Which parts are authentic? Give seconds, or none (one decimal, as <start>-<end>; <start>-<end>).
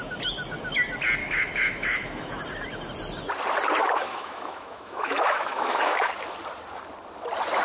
0.0-1.2; 2.4-3.8; 6.1-7.6